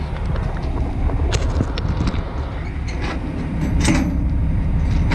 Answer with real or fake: real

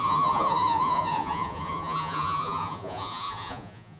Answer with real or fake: fake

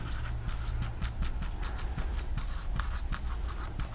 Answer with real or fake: real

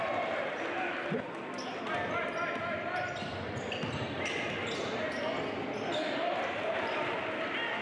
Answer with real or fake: real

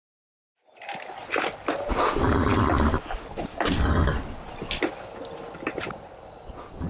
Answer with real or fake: real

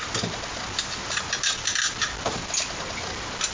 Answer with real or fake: real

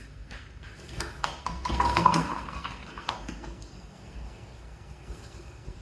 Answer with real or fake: fake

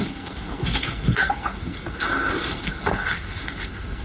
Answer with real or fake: fake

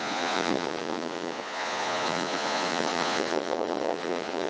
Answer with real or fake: fake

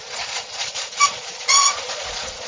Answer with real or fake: fake